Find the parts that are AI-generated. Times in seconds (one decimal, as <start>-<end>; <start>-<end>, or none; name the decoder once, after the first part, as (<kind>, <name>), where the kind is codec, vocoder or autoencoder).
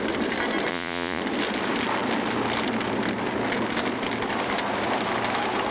0.7-1.2 (vocoder, Vocos)